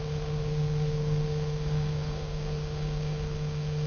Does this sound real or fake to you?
fake